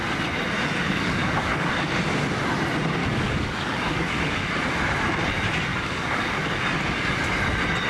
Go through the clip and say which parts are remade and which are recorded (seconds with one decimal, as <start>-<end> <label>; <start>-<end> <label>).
0.0-0.8 recorded; 0.8-2.0 remade; 2.0-3.0 recorded; 3.0-4.5 remade; 4.5-5.7 recorded; 5.7-6.6 remade; 6.6-7.9 recorded